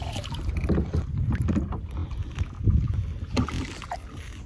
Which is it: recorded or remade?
recorded